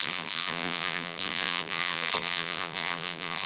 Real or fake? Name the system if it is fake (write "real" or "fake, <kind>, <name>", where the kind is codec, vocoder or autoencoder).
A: fake, vocoder, BigVGAN v2